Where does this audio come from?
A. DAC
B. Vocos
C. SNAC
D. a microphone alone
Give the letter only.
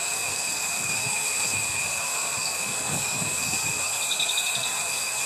C